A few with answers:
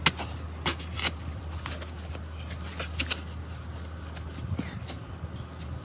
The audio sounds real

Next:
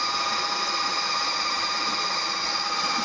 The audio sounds real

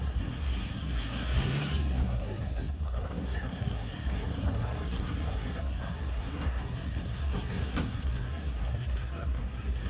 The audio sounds fake